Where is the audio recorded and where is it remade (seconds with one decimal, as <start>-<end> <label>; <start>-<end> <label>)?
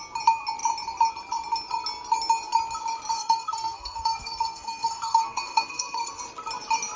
0.0-3.1 recorded; 3.1-6.2 remade; 6.2-7.0 recorded